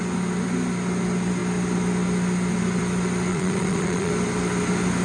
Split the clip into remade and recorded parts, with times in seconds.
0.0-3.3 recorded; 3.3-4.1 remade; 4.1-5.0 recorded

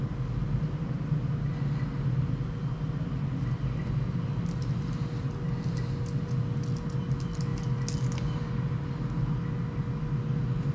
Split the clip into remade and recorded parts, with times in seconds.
0.0-10.7 recorded

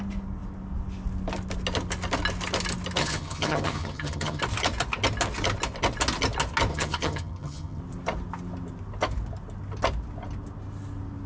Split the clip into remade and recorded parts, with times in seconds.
0.0-3.0 recorded; 3.0-4.4 remade; 4.4-6.7 recorded; 6.7-7.8 remade; 7.8-11.3 recorded